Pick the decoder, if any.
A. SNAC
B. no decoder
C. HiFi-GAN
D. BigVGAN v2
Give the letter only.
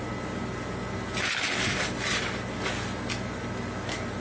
B